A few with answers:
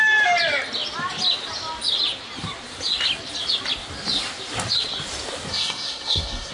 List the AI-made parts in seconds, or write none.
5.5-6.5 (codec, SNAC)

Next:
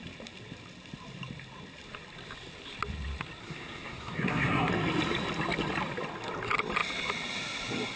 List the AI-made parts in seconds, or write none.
3.4-4.7 (codec, SNAC)

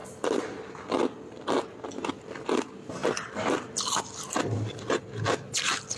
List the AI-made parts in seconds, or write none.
none

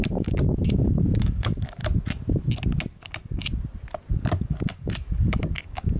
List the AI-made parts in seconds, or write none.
0.0-1.8 (codec, DAC); 4.1-6.0

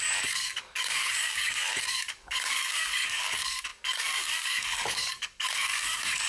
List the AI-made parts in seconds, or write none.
0.0-6.3 (codec, DAC)

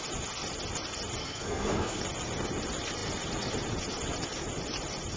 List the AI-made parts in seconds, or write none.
1.2-2.0 (codec, SNAC)

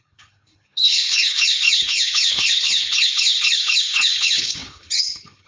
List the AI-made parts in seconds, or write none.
0.0-5.5 (codec, HILCodec)

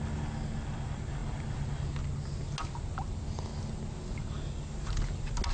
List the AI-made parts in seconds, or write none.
none